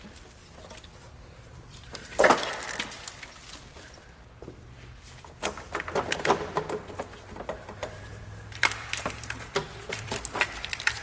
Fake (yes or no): yes